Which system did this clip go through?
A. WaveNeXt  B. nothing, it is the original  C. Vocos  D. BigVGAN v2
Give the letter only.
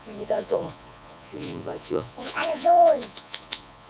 C